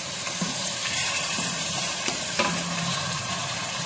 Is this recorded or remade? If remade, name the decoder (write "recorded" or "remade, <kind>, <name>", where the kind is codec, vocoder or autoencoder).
remade, vocoder, BigVGAN v2